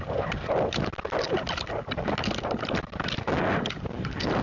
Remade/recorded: recorded